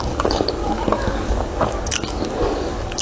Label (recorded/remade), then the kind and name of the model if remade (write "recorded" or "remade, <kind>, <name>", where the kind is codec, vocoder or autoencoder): remade, codec, DAC